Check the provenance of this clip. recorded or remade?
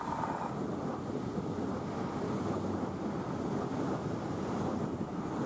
recorded